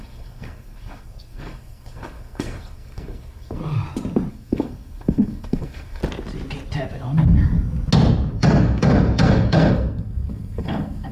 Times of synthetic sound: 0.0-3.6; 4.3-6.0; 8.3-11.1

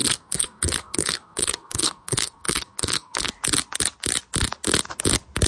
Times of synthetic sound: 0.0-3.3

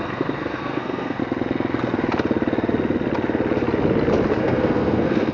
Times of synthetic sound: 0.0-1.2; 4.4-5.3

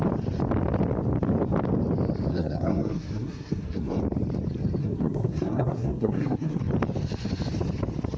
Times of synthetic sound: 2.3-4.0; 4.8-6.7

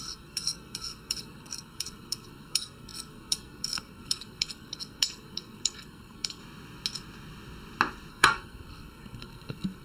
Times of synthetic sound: 0.0-6.4; 8.1-9.8

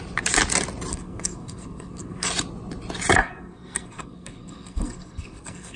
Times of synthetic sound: 0.9-2.3; 3.2-5.8